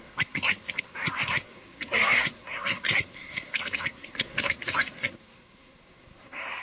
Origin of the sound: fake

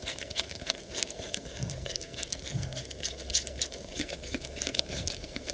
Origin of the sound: fake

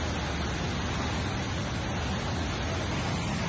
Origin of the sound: real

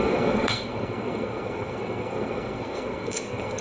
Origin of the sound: fake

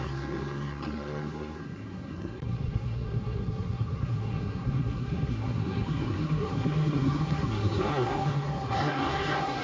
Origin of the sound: fake